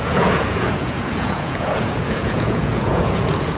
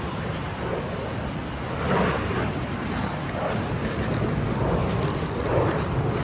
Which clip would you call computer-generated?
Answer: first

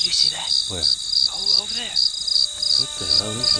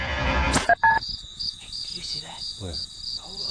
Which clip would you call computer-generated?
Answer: second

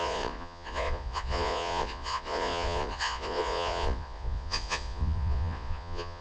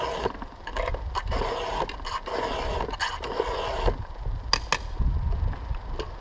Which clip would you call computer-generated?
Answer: first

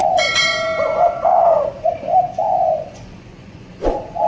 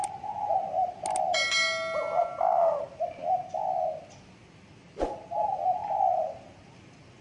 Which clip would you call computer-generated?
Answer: first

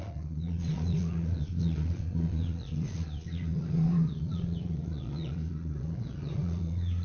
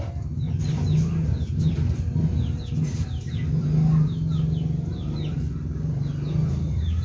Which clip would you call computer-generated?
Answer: first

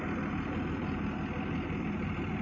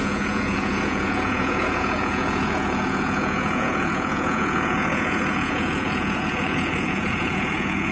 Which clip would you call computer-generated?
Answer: second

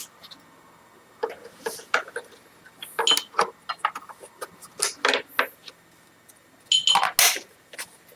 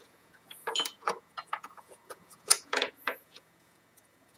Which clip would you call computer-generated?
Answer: second